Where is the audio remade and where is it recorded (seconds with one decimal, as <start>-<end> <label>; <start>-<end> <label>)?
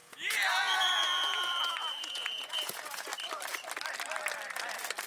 0.0-3.1 remade; 3.1-5.1 recorded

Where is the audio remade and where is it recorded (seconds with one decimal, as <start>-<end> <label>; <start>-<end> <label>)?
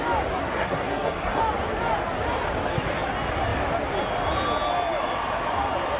0.0-0.4 recorded; 0.4-1.4 remade; 1.4-6.0 recorded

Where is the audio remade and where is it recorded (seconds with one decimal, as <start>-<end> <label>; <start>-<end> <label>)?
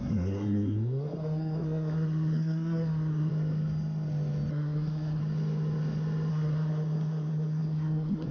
0.0-3.3 remade; 3.3-4.5 recorded; 4.5-5.2 remade; 5.2-6.3 recorded; 6.3-8.3 remade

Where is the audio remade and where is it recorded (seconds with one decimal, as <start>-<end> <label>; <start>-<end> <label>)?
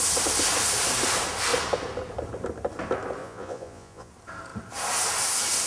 0.0-3.2 recorded; 3.2-4.1 remade; 4.1-5.7 recorded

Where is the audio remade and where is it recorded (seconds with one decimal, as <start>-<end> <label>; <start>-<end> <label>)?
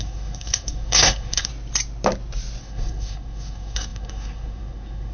0.0-1.5 remade; 1.5-2.6 recorded; 2.6-5.1 remade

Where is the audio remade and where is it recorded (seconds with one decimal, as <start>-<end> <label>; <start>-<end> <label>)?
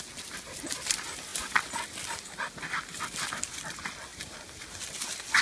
0.0-5.4 recorded